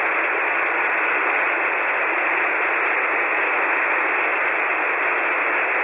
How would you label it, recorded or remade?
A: recorded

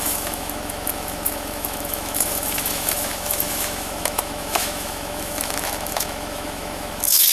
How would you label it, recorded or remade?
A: remade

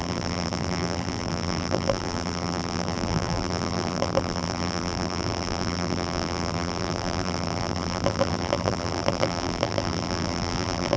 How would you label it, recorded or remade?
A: remade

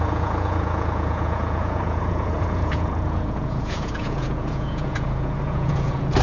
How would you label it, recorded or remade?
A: remade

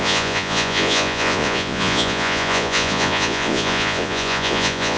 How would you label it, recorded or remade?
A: remade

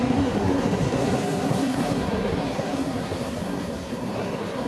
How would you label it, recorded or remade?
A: remade